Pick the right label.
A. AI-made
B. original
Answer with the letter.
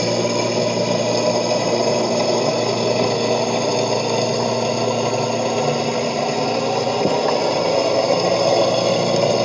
B